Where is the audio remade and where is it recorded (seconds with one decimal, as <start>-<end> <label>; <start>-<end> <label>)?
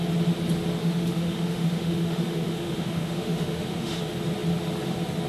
0.0-0.8 recorded; 0.8-4.0 remade; 4.0-5.3 recorded